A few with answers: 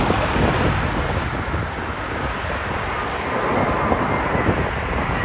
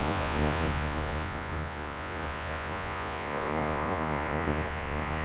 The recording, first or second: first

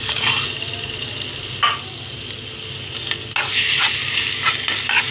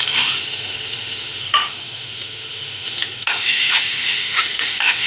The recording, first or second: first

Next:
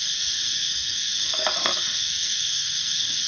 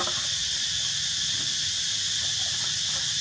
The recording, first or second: second